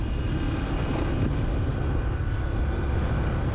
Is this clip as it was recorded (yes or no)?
yes